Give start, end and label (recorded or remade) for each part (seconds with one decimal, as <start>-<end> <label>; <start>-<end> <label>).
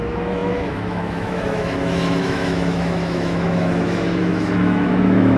0.0-5.4 remade